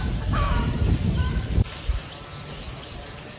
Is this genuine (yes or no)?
yes